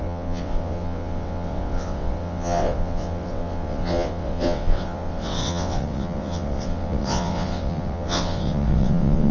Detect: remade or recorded remade